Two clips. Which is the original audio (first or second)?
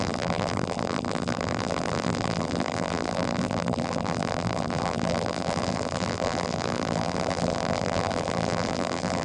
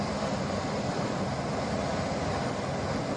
second